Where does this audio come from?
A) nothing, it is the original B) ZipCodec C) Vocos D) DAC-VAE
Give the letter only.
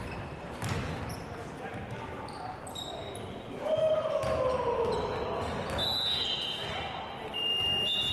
A